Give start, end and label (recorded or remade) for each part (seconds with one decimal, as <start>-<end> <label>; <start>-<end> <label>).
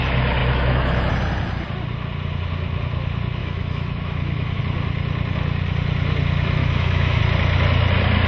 0.0-0.4 recorded; 0.4-1.1 remade; 1.1-3.4 recorded; 3.4-4.6 remade; 4.6-6.6 recorded; 6.6-7.2 remade; 7.2-8.3 recorded